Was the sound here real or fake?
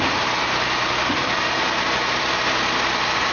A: real